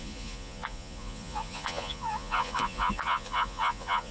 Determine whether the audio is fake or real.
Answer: fake